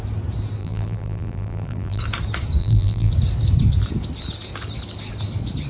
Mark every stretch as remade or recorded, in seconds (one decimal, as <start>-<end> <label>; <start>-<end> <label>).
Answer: 0.0-0.6 recorded; 0.6-2.0 remade; 2.0-2.6 recorded; 2.6-3.1 remade; 3.1-5.7 recorded